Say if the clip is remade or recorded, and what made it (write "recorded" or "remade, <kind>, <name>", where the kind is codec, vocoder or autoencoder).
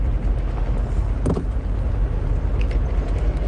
recorded